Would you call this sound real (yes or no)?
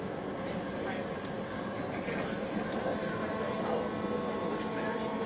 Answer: yes